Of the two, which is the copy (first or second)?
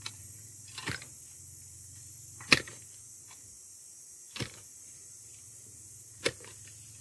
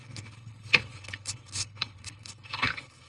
second